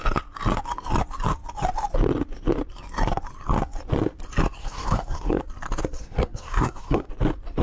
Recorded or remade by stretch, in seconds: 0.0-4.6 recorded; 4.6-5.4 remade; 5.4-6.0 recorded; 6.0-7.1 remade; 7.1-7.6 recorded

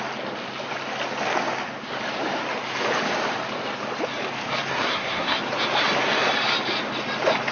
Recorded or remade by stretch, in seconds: 0.0-4.7 recorded; 4.7-5.4 remade; 5.4-7.5 recorded

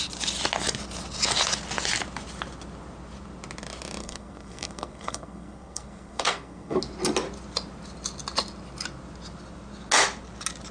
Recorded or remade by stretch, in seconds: 0.0-4.0 recorded; 4.0-6.8 remade; 6.8-10.7 recorded